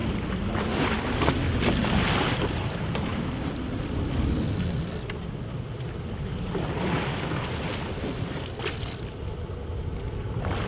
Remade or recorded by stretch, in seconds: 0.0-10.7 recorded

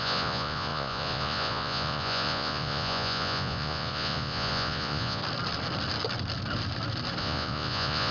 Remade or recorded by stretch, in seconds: 0.0-5.2 remade; 5.2-7.2 recorded; 7.2-8.1 remade

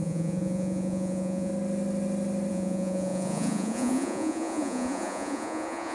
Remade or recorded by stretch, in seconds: 0.0-1.5 remade; 1.5-2.5 recorded; 2.5-5.9 remade

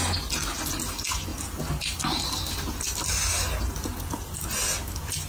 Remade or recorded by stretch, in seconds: 0.0-5.3 recorded

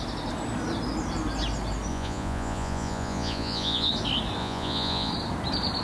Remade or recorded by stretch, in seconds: 0.0-1.9 recorded; 1.9-3.9 remade; 3.9-4.4 recorded; 4.4-5.1 remade; 5.1-5.8 recorded